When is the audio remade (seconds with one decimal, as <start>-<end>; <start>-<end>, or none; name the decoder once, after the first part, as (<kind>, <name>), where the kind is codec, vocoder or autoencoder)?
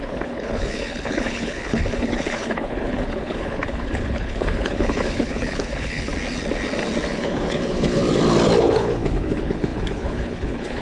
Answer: 0.0-6.1 (codec, HILCodec); 7.1-8.0; 8.6-10.8